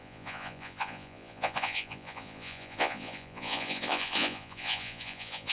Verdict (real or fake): fake